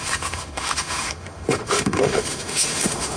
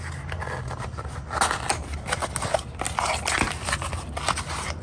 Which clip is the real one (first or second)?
second